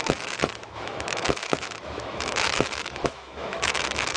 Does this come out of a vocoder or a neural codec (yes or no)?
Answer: yes